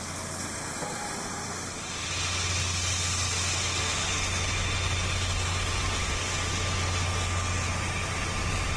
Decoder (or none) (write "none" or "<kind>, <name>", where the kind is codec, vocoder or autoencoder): none